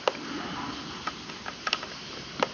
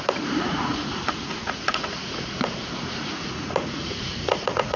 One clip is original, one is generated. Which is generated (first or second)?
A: second